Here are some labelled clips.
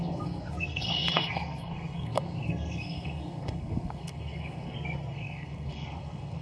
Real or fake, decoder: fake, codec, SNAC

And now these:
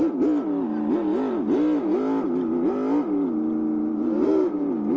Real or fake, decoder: real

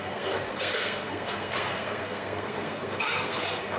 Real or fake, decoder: fake, codec, SNAC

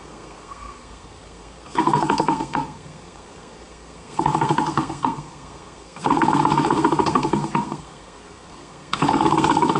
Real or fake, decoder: fake, codec, SNAC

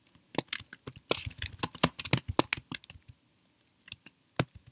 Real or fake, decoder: real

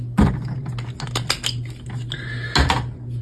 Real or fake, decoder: real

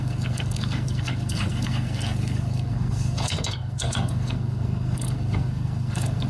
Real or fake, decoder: fake, codec, SNAC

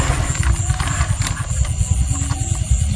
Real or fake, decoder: real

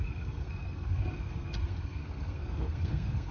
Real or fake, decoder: fake, codec, SNAC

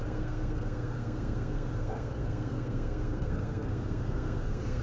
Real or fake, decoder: fake, codec, SNAC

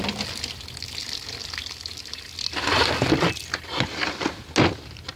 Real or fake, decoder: real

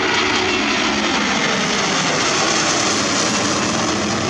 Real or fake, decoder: real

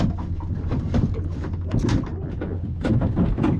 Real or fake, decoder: real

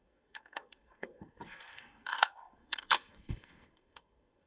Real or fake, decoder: fake, codec, SNAC